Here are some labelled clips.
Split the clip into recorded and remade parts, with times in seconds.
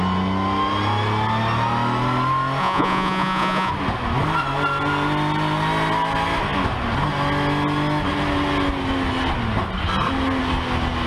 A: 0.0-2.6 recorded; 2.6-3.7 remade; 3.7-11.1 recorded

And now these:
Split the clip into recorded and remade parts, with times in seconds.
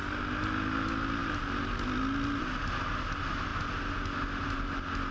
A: 0.0-5.1 recorded